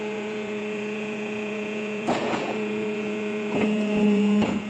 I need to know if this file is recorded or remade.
remade